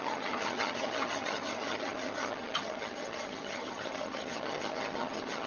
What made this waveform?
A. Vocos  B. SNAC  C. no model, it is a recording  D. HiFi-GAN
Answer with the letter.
D